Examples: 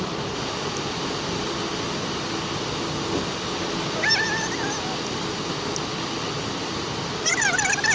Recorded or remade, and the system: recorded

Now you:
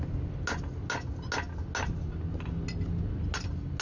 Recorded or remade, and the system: recorded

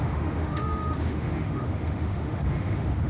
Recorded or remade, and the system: remade, autoencoder, DAC-VAE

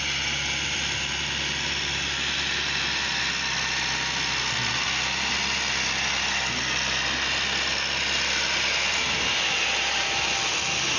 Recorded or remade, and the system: recorded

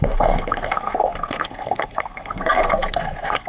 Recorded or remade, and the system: remade, codec, SNAC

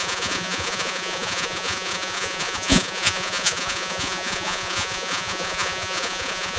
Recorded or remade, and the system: remade, vocoder, Vocos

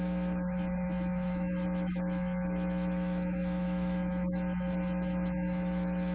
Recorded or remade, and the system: remade, autoencoder, DAC-VAE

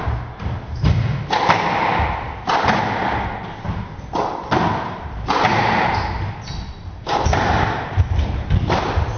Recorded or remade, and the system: recorded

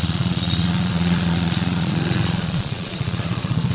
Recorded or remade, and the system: remade, vocoder, Vocos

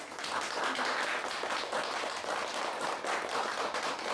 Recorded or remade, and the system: recorded